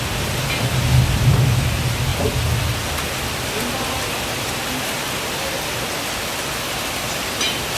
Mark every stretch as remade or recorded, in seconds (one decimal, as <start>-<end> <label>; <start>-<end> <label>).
0.0-7.8 recorded